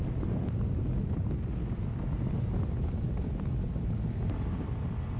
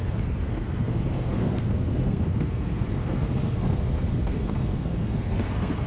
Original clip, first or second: first